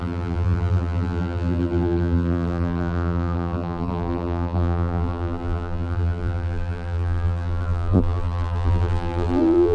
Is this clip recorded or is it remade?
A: remade